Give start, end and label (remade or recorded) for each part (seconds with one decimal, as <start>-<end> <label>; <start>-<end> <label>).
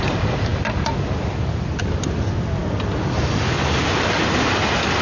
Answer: 0.0-5.0 recorded